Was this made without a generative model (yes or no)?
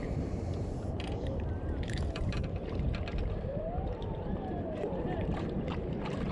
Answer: no